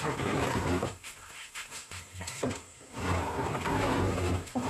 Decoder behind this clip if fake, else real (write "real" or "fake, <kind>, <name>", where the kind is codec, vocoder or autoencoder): fake, codec, SNAC